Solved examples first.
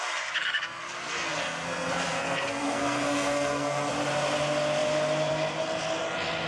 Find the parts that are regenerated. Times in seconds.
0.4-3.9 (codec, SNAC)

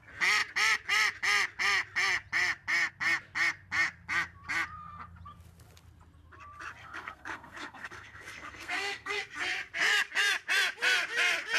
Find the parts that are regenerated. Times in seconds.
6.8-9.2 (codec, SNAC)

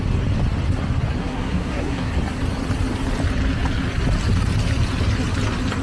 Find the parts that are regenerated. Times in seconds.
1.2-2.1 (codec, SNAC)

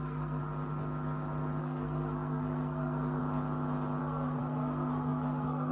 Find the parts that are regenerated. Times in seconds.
0.0-0.4 (codec, SNAC); 1.6-3.2; 4.0-5.7

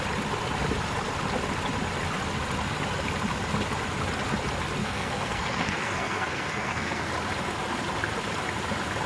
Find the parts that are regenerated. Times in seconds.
4.8-7.1 (codec, SNAC)

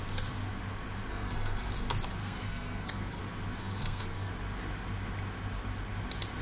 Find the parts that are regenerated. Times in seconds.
1.1-1.7 (codec, SNAC); 2.2-3.2; 3.6-4.3

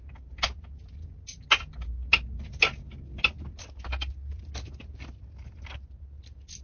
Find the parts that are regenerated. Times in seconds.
none